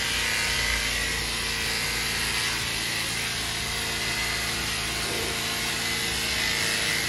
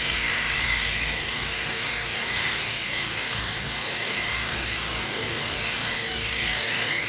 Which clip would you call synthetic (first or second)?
second